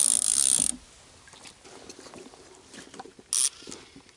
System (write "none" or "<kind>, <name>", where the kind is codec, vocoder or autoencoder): none